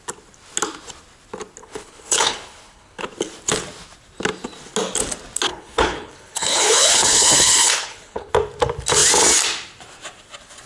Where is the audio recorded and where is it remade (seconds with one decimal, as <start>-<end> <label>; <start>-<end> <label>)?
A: 0.0-1.6 recorded; 1.6-3.0 remade; 3.0-5.5 recorded; 5.5-8.3 remade; 8.3-10.7 recorded